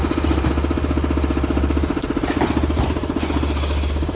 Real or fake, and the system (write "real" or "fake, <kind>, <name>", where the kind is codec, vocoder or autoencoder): real